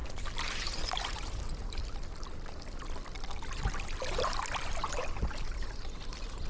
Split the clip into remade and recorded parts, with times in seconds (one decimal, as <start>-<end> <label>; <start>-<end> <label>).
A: 0.0-6.5 recorded